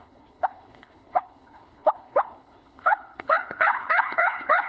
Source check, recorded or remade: remade